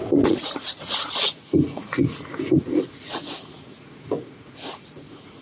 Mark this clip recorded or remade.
remade